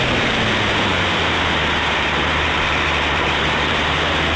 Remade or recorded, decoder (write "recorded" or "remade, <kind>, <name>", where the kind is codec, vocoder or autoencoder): remade, vocoder, BigVGAN v2